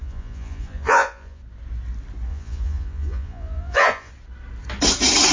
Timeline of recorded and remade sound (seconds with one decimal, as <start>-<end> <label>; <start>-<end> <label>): 0.0-1.4 remade; 1.4-2.3 recorded; 2.3-4.1 remade; 4.1-5.3 recorded